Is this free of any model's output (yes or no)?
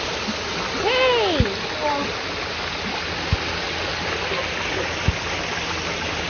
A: yes